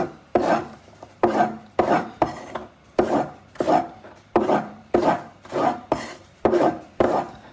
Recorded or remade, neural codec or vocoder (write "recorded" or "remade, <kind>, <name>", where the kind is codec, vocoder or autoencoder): remade, vocoder, BigVGAN v2